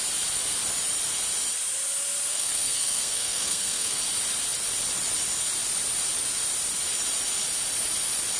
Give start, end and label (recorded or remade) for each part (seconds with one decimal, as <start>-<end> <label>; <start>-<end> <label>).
0.0-2.3 recorded; 2.3-4.0 remade; 4.0-8.4 recorded